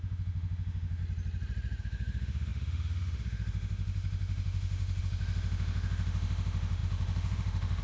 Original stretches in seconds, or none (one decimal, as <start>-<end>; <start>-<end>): 1.0-1.8